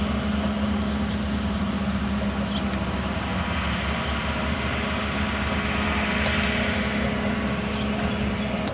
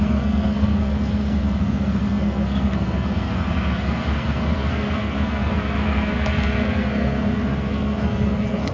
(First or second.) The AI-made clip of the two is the second